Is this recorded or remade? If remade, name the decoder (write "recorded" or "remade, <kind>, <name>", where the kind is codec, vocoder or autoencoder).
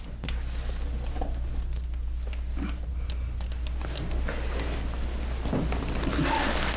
recorded